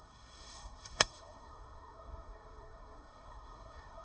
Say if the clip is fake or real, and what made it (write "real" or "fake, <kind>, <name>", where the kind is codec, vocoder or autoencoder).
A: fake, codec, SNAC